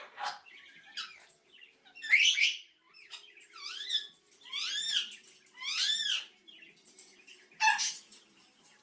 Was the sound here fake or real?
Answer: fake